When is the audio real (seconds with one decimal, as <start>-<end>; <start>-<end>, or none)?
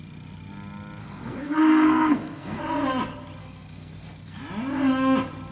0.0-1.0; 2.6-3.4; 4.4-5.5